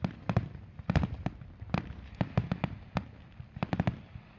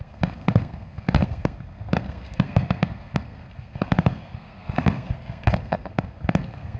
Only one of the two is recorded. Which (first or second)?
first